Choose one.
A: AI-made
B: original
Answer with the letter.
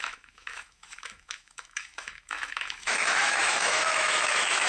A